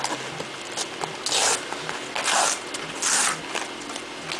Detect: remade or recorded recorded